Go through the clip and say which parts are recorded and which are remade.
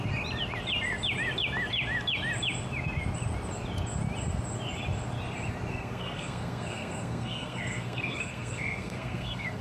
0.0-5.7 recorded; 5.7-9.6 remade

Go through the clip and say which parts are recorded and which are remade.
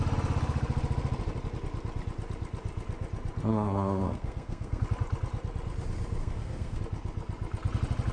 0.0-3.5 recorded; 3.5-4.8 remade; 4.8-6.2 recorded; 6.2-6.8 remade; 6.8-8.1 recorded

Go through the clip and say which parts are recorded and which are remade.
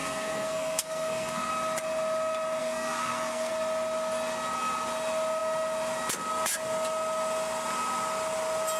0.0-1.5 remade; 1.5-2.6 recorded; 2.6-3.5 remade; 3.5-8.8 recorded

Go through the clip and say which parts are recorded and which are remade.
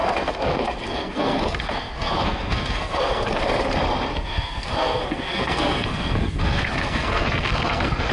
0.0-3.4 remade; 3.4-4.1 recorded; 4.1-8.1 remade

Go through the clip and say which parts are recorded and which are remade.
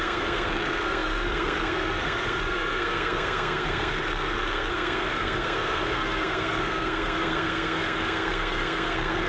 0.0-9.3 remade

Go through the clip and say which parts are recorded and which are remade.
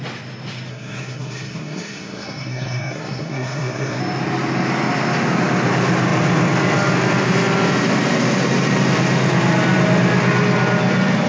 0.0-0.7 recorded; 0.7-4.0 remade; 4.0-11.3 recorded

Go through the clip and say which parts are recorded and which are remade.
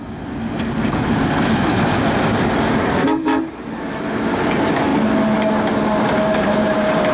0.0-2.9 recorded; 2.9-3.4 remade; 3.4-7.1 recorded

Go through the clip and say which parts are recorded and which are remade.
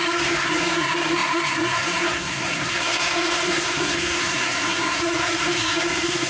0.0-6.3 remade